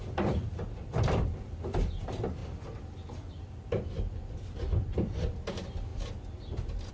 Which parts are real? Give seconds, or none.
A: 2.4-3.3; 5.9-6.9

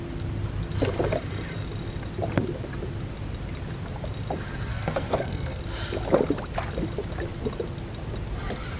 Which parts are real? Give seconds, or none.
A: 0.0-4.7; 5.6-8.8

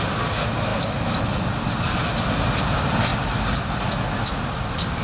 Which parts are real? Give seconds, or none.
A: 0.0-5.0

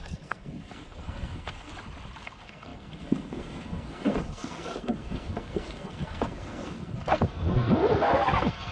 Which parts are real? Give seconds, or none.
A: 1.7-2.2

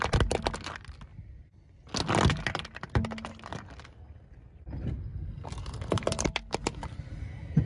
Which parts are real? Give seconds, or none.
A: 0.0-1.1; 2.2-5.1; 7.3-7.7

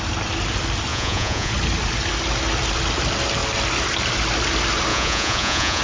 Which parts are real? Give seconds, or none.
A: 0.0-0.9; 1.5-4.9